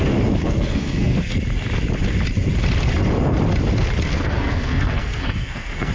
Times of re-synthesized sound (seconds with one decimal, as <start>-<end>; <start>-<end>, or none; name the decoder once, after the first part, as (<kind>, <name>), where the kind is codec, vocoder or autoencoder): 0.4-1.4 (codec, SNAC); 4.1-5.9